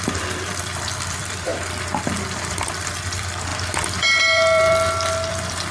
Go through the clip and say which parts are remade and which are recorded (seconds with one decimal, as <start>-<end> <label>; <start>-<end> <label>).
0.0-1.5 remade; 1.5-2.4 recorded; 2.4-3.5 remade; 3.5-4.2 recorded; 4.2-4.7 remade; 4.7-5.3 recorded; 5.3-5.7 remade